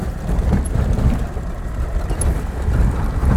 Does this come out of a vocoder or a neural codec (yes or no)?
no